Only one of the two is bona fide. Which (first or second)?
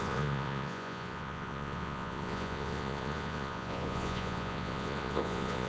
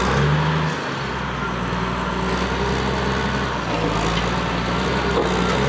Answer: second